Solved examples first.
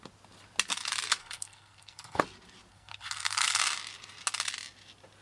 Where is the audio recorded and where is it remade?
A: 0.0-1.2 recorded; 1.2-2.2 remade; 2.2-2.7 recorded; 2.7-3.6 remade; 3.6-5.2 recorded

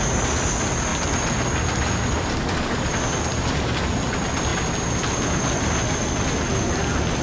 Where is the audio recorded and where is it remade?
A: 0.0-7.2 recorded

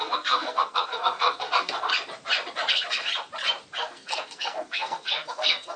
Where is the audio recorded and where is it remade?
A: 0.0-1.9 remade; 1.9-2.7 recorded; 2.7-3.1 remade; 3.1-3.8 recorded; 3.8-5.8 remade

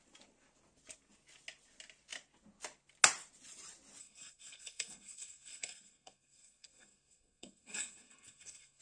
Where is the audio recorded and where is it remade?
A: 0.0-4.0 recorded; 4.0-8.8 remade